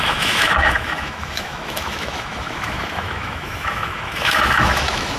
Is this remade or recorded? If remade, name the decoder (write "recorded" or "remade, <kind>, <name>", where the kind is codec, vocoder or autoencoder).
remade, autoencoder, DAC-VAE